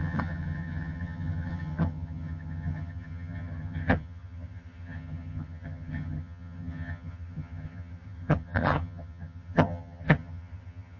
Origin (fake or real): fake